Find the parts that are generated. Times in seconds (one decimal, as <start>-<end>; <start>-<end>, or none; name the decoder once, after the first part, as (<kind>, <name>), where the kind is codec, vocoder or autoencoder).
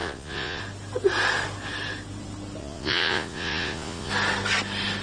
0.0-0.6 (vocoder, Vocos); 2.6-4.1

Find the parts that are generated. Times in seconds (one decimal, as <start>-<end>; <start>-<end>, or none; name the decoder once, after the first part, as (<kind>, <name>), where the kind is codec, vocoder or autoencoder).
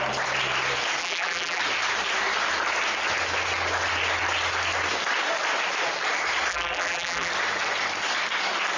1.0-1.6 (vocoder, BigVGAN v2); 6.5-7.3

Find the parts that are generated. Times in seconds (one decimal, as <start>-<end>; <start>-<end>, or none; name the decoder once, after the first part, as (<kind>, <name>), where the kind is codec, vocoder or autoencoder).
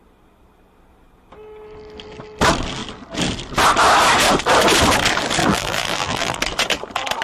5.4-6.4 (vocoder, BigVGAN v2)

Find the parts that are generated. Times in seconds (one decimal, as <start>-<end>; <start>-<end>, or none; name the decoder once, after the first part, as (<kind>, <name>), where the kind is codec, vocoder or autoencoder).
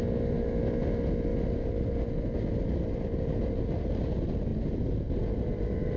4.5-6.0 (vocoder, BigVGAN v2)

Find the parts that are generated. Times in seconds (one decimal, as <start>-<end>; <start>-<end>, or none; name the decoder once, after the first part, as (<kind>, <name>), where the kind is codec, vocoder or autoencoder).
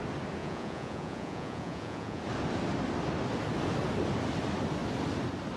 0.4-2.2 (vocoder, Vocos)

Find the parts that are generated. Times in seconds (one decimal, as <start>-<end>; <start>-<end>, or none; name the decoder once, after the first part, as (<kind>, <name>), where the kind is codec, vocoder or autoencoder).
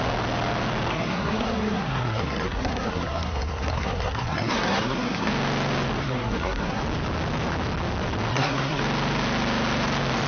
0.9-5.3 (codec, SNAC); 6.0-6.8; 8.3-8.8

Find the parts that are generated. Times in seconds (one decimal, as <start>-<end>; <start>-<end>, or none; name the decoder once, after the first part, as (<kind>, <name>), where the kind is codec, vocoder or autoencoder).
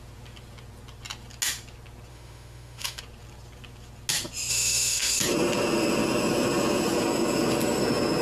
2.1-3.0 (autoencoder, DAC-VAE); 4.5-5.2